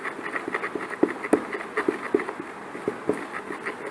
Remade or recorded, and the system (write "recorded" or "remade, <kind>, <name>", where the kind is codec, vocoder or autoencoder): recorded